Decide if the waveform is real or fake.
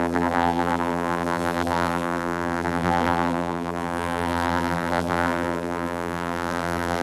fake